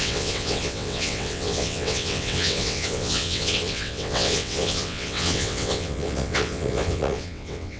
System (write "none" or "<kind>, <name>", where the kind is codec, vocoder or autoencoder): vocoder, WaveNeXt